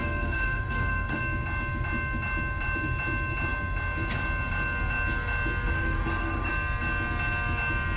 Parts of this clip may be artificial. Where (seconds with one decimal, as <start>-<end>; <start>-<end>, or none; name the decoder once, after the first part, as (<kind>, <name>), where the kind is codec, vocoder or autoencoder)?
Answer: 0.0-1.2 (codec, SNAC); 5.7-6.5